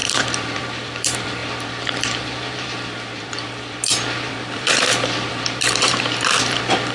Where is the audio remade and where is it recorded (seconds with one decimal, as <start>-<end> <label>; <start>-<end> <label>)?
0.0-6.9 remade